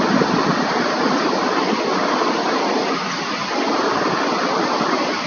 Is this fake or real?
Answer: real